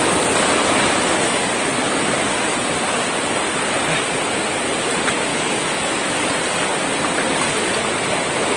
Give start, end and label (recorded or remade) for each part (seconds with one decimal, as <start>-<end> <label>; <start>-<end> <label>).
0.0-5.3 recorded; 5.3-6.3 remade; 6.3-8.6 recorded